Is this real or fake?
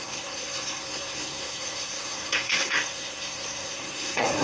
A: fake